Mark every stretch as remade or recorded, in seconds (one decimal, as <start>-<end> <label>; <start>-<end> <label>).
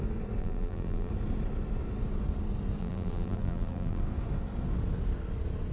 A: 0.0-0.4 recorded; 0.4-1.1 remade; 1.1-2.8 recorded; 2.8-4.0 remade; 4.0-5.7 recorded